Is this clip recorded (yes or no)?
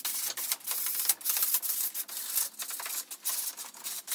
yes